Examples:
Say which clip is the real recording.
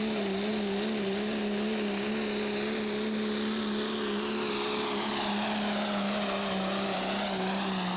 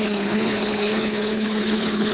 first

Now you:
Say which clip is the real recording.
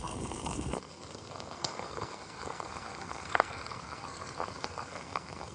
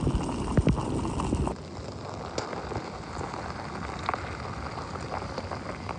second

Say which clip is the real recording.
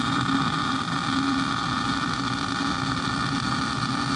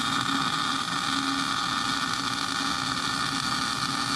second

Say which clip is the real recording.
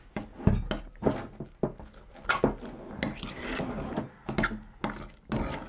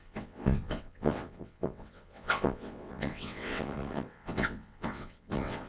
first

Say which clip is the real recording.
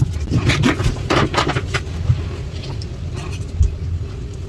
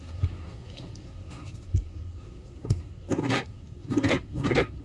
first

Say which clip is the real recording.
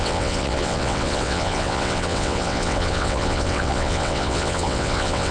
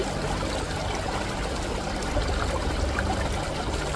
second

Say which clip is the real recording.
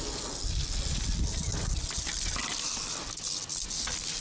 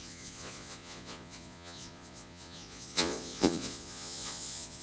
first